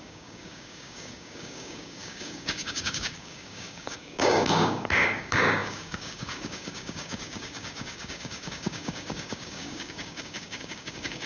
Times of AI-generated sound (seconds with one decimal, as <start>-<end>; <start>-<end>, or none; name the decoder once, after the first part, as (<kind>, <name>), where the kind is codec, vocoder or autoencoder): 0.0-11.3 (codec, DAC)